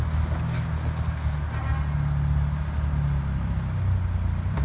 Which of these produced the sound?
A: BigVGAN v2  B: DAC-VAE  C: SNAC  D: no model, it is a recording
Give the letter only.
D